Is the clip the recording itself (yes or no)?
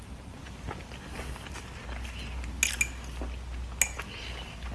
yes